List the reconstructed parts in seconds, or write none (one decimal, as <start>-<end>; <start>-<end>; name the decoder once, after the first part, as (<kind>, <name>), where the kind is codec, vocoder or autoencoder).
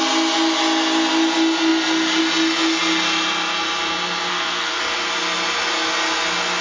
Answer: 4.3-4.8 (codec, SNAC)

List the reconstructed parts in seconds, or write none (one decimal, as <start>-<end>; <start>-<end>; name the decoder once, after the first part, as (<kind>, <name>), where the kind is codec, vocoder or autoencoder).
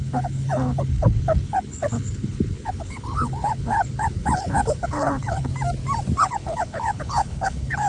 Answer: 0.0-5.5 (codec, HILCodec); 6.2-7.9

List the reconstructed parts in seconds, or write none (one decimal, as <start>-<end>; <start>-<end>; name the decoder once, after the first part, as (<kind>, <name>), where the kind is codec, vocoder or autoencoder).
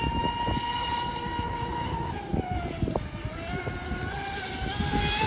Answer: none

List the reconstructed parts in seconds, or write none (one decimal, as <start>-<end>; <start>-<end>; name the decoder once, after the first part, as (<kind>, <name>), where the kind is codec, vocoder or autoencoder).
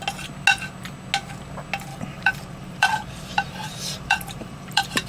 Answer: 1.9-5.1 (vocoder, BigVGAN v2)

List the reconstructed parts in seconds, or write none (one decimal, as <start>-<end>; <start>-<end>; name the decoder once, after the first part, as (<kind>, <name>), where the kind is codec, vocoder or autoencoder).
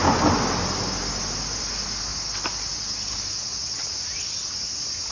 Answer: none